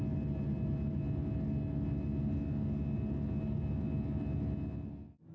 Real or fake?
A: real